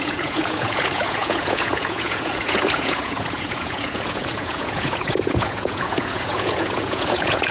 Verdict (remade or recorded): remade